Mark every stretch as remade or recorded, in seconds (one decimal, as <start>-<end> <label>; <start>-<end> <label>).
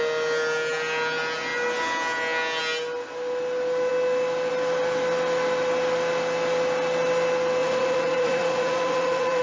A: 0.0-7.6 recorded; 7.6-9.4 remade